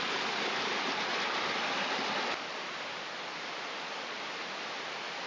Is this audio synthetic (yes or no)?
no